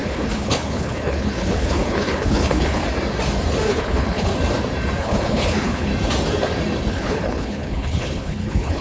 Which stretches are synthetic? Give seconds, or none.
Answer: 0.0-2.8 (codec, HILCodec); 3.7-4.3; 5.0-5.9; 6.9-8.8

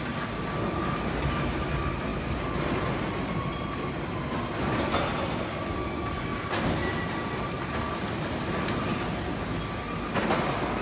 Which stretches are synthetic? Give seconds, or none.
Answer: none